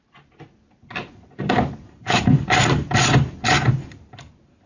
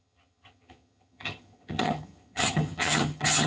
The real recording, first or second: first